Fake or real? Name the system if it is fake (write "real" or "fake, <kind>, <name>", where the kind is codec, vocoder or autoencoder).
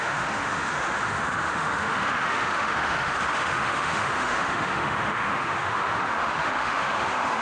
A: fake, autoencoder, DAC-VAE